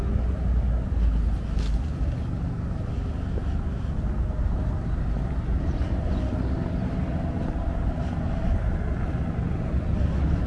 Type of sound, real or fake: real